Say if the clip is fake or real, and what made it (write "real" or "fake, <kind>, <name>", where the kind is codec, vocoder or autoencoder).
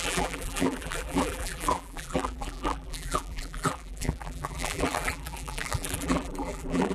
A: fake, vocoder, BigVGAN v2